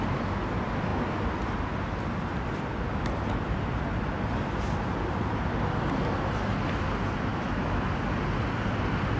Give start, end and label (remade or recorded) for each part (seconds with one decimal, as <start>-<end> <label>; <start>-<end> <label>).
0.0-7.3 recorded; 7.3-7.9 remade; 7.9-9.2 recorded